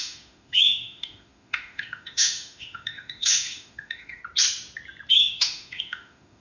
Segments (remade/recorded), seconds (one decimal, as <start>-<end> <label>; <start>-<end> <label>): 0.0-4.2 remade; 4.2-5.1 recorded; 5.1-6.4 remade